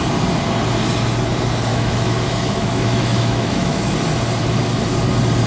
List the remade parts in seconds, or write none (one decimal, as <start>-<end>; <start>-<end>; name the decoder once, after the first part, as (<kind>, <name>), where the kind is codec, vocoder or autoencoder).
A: 1.7-3.9 (autoencoder, DAC-VAE)